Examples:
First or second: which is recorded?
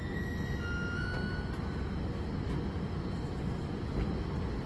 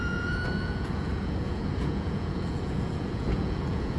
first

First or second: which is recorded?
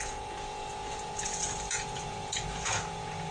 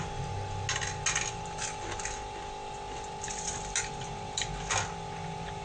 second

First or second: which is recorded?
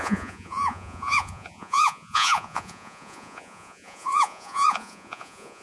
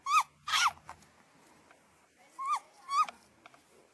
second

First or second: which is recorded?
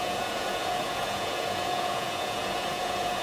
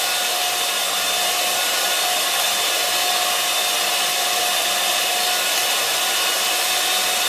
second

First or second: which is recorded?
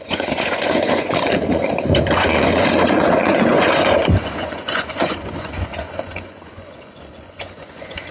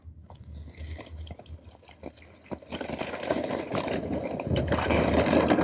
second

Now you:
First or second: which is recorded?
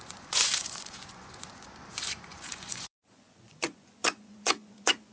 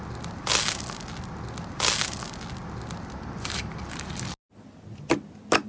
second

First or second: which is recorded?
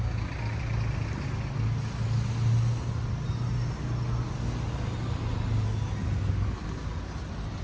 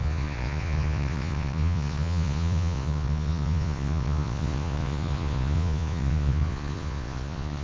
first